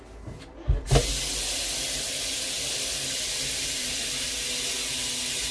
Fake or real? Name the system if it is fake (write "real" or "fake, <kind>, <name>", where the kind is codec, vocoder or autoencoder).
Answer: real